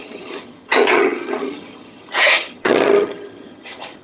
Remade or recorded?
remade